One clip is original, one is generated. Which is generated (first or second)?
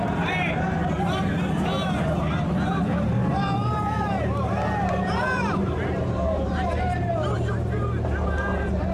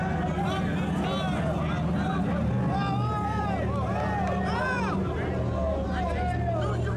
first